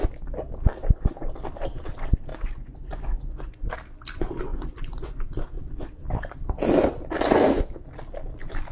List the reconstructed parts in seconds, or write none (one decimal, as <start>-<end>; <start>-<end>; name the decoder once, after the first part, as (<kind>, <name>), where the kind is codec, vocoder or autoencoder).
2.3-3.6 (vocoder, Vocos); 4.5-5.2